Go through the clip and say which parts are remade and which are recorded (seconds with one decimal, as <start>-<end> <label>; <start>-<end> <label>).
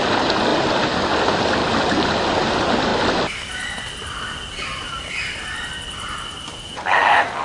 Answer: 0.0-7.4 recorded